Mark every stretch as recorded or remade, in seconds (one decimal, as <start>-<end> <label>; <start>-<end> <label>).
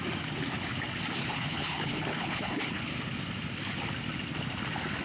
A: 0.0-1.2 recorded; 1.2-2.8 remade; 2.8-5.0 recorded